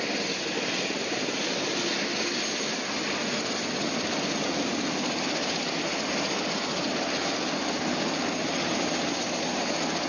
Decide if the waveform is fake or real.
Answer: real